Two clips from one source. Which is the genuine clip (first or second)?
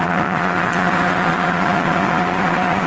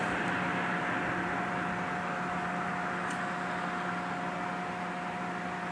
second